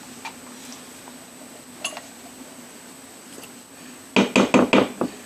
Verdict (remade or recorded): recorded